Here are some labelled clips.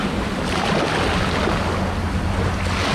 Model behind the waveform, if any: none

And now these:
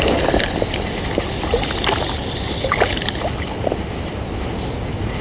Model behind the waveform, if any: none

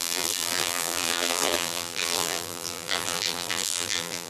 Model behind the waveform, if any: vocoder, BigVGAN v2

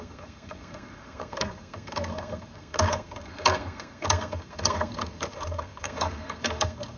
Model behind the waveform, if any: codec, SNAC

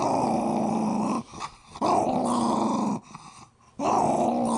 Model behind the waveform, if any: none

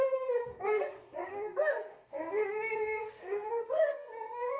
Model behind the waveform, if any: codec, SNAC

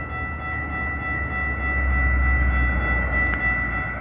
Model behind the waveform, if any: none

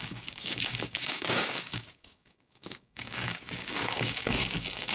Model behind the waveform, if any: codec, DAC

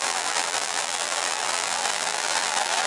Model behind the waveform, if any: vocoder, BigVGAN v2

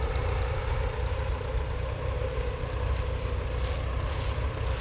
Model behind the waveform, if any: none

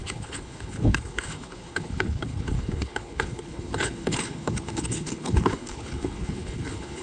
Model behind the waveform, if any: codec, HILCodec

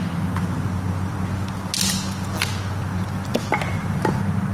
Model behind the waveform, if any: none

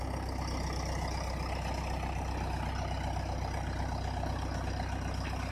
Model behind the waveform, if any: none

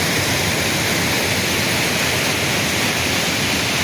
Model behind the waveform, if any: none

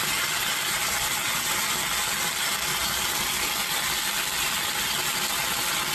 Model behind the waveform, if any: none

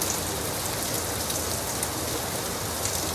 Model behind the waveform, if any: none